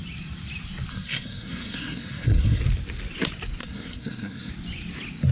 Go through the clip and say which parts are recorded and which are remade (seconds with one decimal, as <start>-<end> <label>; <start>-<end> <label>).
0.0-0.9 recorded; 0.9-2.6 remade; 2.6-3.6 recorded; 3.6-4.5 remade; 4.5-5.3 recorded